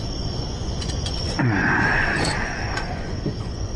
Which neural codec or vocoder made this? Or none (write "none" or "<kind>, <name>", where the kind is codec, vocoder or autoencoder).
vocoder, Vocos